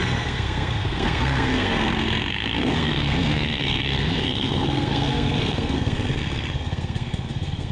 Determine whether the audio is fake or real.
fake